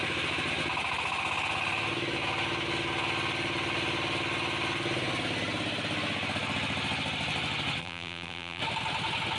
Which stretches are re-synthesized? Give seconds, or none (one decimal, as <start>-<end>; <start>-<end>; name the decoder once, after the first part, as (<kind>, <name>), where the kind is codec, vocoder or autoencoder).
7.8-8.6 (vocoder, BigVGAN v2)